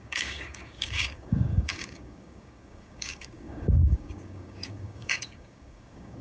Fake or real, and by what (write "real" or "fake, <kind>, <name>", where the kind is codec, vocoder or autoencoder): fake, codec, DAC